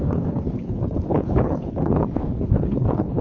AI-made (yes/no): yes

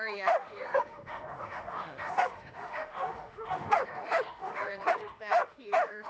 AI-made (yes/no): yes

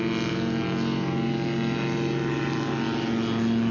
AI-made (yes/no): no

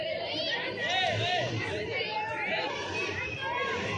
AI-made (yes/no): yes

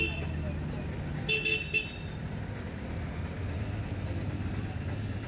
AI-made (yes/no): no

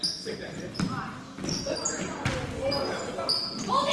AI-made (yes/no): no